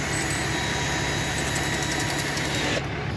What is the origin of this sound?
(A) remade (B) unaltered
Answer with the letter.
B